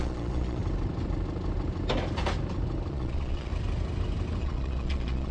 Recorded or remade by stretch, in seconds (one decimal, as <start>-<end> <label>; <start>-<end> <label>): 0.0-0.6 remade; 0.6-2.9 recorded; 2.9-3.5 remade; 3.5-4.4 recorded; 4.4-5.3 remade